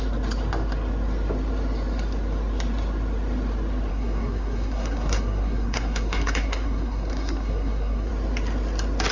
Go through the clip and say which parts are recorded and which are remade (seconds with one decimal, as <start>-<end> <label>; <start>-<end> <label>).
0.0-3.9 recorded; 3.9-8.1 remade; 8.1-9.1 recorded